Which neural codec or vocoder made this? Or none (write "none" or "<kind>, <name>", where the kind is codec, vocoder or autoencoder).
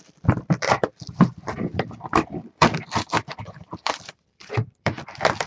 vocoder, BigVGAN v2